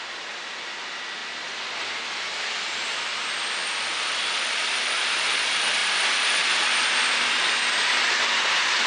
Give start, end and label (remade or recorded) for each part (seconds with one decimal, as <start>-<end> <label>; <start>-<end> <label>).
0.0-8.9 recorded